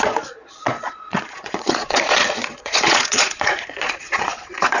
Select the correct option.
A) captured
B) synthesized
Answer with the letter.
B